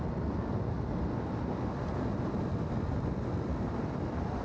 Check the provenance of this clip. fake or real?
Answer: real